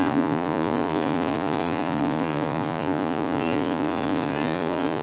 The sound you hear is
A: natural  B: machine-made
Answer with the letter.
B